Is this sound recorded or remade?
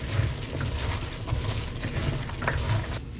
recorded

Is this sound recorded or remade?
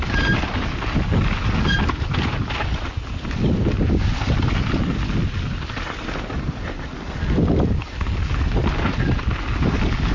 recorded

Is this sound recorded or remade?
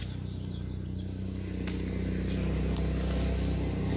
recorded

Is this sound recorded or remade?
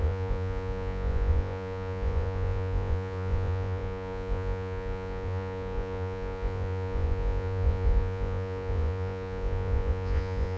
remade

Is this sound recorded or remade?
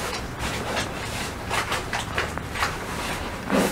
remade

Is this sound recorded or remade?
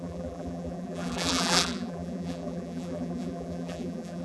remade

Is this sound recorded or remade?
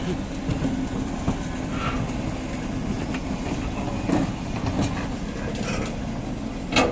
recorded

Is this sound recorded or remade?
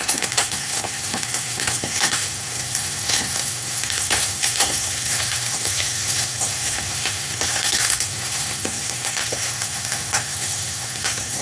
remade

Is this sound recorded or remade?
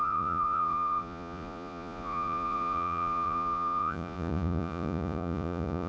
remade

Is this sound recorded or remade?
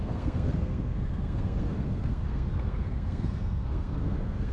remade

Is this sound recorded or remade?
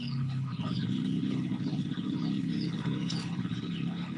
remade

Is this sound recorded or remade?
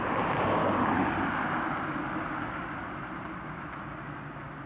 recorded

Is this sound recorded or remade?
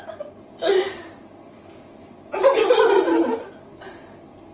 recorded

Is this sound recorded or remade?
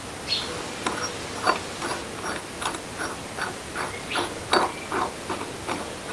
recorded